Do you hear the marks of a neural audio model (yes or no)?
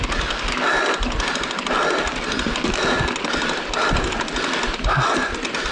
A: no